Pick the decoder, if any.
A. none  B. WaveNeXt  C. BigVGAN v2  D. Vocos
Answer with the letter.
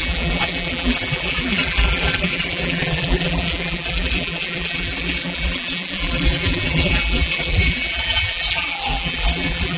C